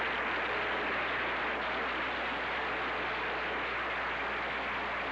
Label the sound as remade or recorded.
recorded